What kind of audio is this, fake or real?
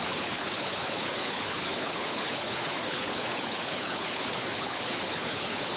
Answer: fake